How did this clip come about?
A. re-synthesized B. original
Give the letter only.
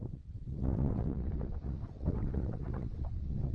A